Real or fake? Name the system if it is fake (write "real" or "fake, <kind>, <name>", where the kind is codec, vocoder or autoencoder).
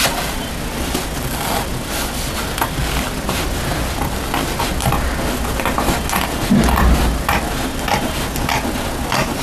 real